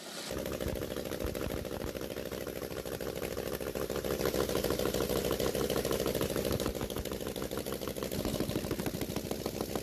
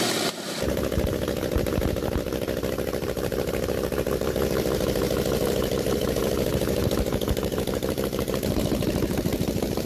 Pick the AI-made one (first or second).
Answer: second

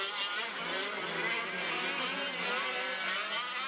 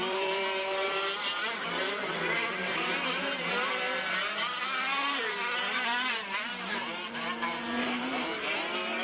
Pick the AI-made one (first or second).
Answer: second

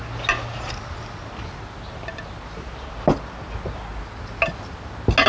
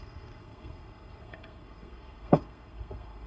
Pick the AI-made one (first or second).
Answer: second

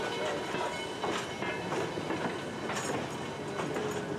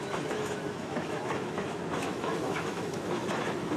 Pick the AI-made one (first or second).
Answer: second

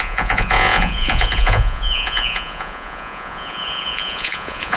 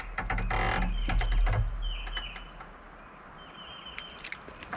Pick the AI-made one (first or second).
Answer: first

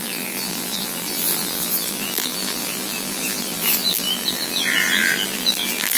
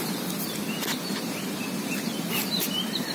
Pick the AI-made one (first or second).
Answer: first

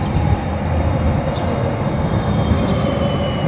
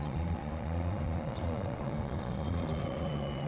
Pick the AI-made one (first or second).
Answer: second